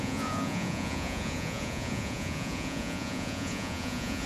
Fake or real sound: fake